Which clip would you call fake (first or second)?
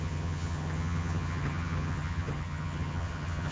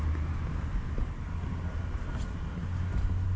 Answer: first